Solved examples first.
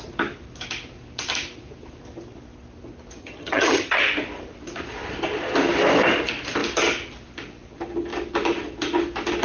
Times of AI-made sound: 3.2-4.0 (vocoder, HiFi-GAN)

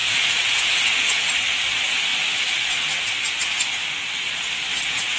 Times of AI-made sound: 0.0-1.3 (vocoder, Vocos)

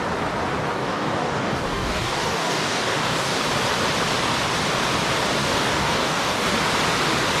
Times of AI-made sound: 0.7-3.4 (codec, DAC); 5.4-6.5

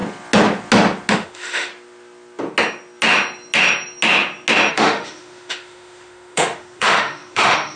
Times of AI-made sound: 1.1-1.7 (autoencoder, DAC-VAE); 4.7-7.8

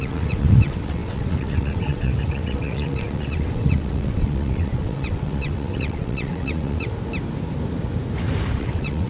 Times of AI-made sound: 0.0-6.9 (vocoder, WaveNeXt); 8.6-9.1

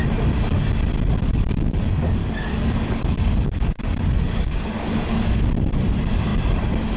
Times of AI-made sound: 1.2-1.8 (codec, DAC); 2.2-5.5

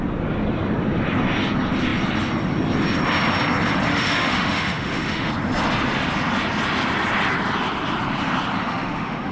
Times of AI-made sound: 3.9-5.3 (autoencoder, DAC-VAE); 8.6-9.3

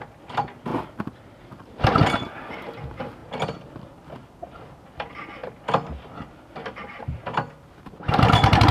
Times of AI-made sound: 3.2-4.4 (vocoder, BigVGAN v2)